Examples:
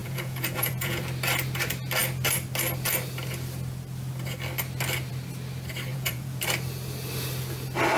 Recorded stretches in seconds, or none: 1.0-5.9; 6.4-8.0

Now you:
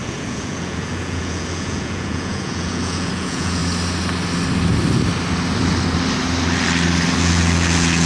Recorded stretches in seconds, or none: 3.6-7.2

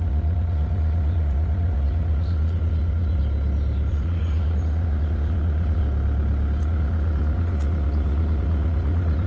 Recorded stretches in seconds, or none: 3.2-3.9; 5.8-6.6

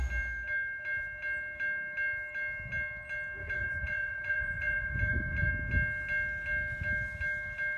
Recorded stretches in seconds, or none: 0.0-3.4; 5.5-7.8